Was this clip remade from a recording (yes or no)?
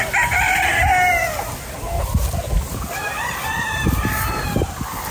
no